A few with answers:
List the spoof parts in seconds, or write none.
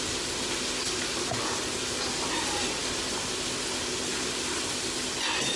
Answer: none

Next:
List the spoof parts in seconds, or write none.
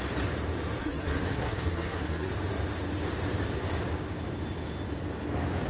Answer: 0.8-2.3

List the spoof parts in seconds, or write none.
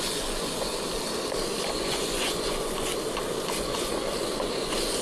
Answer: 0.0-0.7; 1.7-2.9; 3.6-5.0